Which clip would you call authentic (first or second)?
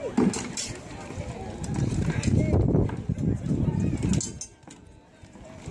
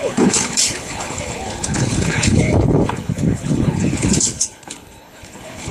first